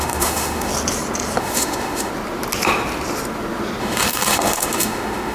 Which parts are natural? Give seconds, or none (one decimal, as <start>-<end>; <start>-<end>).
0.7-1.4; 2.1-3.8